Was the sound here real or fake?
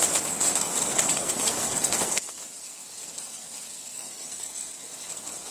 fake